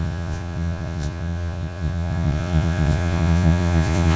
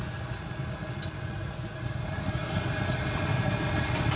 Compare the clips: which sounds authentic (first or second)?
second